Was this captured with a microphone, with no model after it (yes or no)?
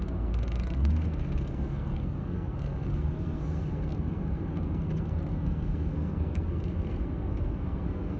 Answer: no